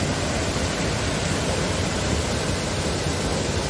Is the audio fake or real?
real